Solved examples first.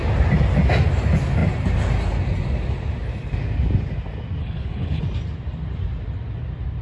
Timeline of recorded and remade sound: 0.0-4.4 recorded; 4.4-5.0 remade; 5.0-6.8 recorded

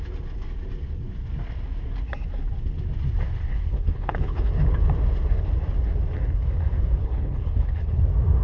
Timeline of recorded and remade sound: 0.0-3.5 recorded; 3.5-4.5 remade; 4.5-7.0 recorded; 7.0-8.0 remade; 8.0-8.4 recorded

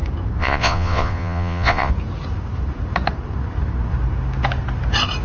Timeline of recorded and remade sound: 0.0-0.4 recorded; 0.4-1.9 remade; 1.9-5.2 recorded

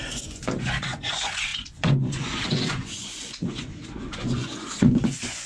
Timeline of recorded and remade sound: 0.0-5.5 remade

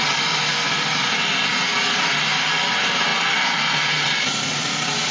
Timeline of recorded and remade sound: 0.0-5.1 recorded

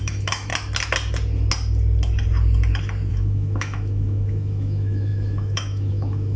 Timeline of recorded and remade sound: 0.0-0.5 remade; 0.5-3.1 recorded; 3.1-6.4 remade

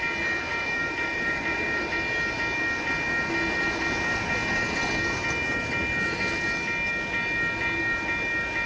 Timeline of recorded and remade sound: 0.0-0.5 recorded; 0.5-1.9 remade; 1.9-8.7 recorded